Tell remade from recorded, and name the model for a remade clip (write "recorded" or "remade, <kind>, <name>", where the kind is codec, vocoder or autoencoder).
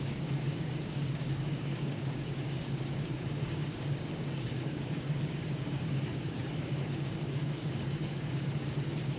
remade, codec, DAC